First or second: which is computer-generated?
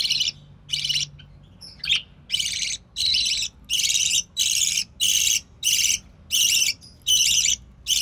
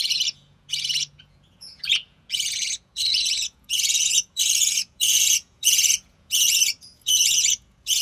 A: second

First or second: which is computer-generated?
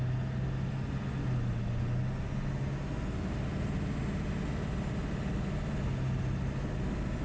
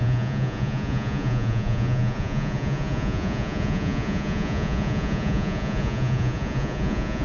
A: second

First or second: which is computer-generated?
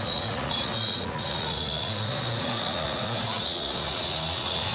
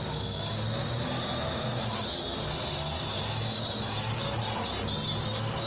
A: first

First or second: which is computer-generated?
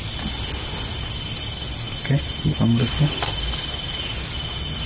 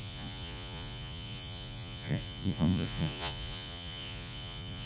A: second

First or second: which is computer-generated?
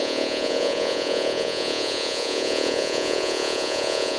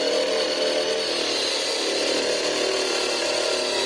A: first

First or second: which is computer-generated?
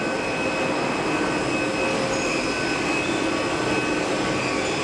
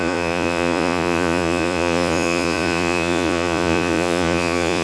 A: second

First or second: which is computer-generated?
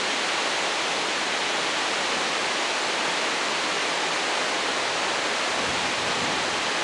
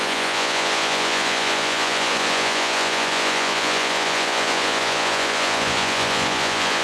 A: second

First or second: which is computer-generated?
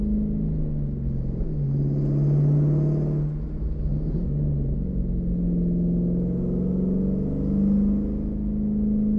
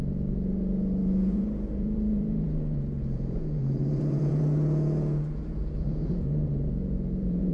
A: second